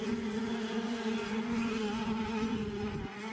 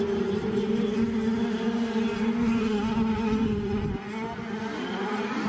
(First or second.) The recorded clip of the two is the second